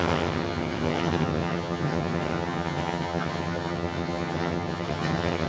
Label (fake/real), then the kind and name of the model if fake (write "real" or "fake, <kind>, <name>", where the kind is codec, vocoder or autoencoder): fake, vocoder, HiFi-GAN